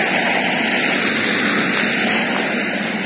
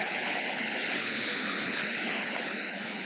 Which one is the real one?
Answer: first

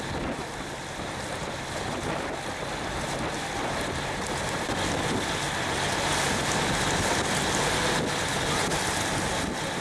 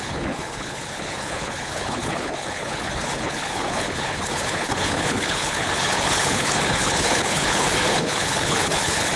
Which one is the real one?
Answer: first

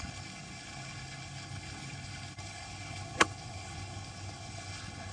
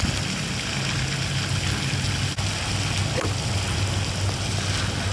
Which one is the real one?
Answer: second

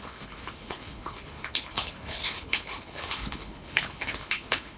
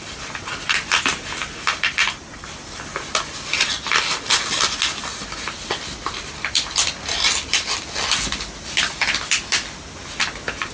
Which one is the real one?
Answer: second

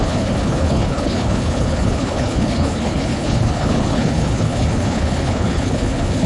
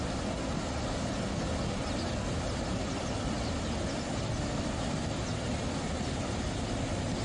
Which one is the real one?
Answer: second